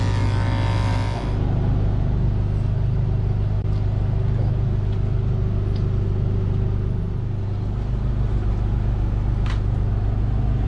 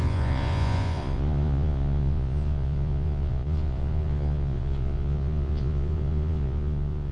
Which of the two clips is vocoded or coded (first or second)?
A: second